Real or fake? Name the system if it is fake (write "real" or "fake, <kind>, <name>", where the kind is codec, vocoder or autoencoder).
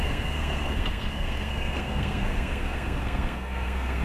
fake, codec, SNAC